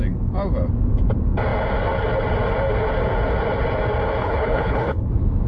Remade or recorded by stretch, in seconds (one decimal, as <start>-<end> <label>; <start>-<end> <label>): 0.0-4.2 recorded; 4.2-5.1 remade; 5.1-5.5 recorded